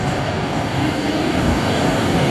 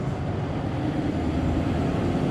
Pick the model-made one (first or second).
first